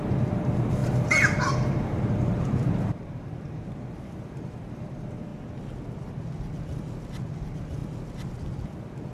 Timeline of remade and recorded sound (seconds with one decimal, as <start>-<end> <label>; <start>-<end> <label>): 0.0-5.3 remade; 5.3-7.3 recorded; 7.3-7.8 remade; 7.8-9.1 recorded